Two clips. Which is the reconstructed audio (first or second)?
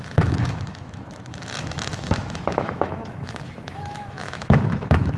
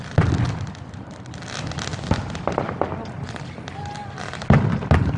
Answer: first